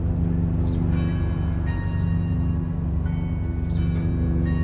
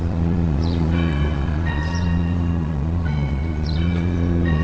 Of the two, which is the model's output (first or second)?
second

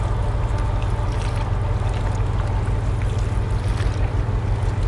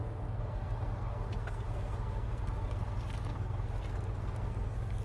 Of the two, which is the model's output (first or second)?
second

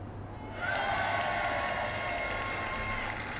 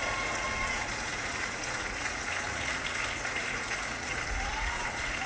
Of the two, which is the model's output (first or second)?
second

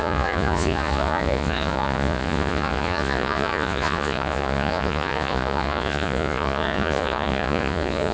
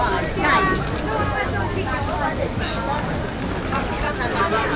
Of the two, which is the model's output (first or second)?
first